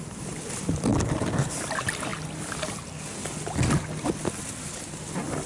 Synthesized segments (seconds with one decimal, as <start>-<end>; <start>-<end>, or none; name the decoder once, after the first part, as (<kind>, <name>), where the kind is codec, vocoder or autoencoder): 0.0-0.9 (vocoder, BigVGAN v2); 1.6-2.1; 4.7-5.5